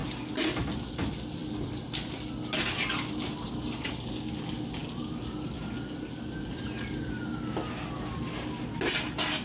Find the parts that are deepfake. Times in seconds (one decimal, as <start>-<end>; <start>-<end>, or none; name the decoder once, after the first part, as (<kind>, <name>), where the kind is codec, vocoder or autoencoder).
none